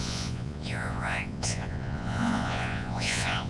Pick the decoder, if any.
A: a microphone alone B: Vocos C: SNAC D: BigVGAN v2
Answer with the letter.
B